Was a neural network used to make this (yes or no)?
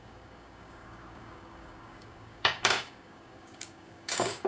yes